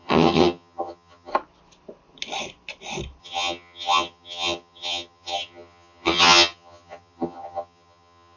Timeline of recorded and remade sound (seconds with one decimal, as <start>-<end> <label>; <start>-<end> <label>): 0.0-1.3 remade; 1.3-3.2 recorded; 3.2-8.4 remade